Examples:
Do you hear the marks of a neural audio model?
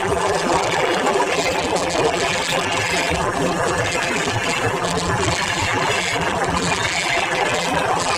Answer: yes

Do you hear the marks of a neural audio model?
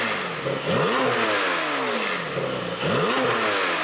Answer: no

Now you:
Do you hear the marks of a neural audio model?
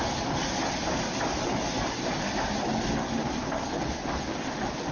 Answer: no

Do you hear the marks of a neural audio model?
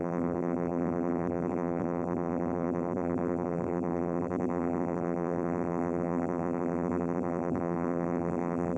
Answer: yes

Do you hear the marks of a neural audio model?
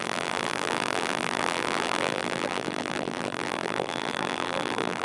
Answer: yes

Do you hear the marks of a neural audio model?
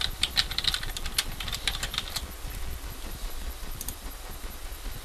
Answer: yes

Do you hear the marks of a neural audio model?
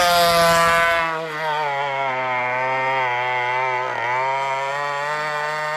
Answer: no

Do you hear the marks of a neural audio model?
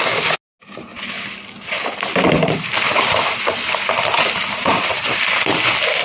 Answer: no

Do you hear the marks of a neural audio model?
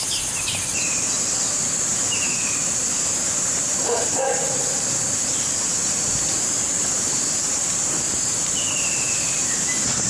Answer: yes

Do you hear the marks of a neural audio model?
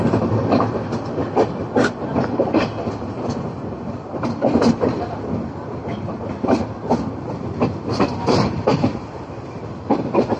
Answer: no